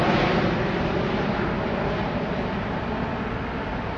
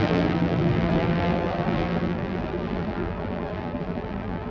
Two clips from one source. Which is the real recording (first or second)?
first